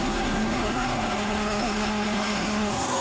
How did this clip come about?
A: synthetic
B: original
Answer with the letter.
A